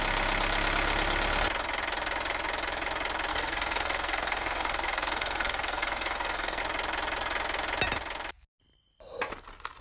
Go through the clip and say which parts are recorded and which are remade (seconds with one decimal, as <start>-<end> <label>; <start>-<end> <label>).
0.0-3.3 recorded; 3.3-6.6 remade; 6.6-9.8 recorded